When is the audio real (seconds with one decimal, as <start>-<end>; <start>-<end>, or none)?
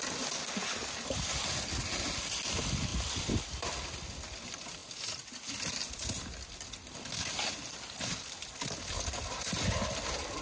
0.0-10.4